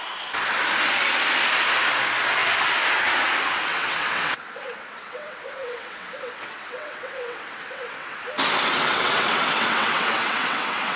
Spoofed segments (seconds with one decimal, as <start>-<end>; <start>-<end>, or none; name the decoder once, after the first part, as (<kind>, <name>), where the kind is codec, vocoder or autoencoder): 3.7-8.2 (vocoder, WaveNeXt); 8.7-11.0